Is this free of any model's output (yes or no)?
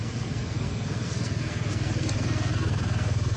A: no